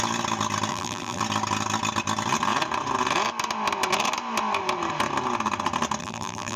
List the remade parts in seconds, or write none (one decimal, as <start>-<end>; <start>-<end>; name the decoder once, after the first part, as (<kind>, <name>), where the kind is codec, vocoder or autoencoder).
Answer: 0.7-1.2 (vocoder, BigVGAN v2); 6.0-6.6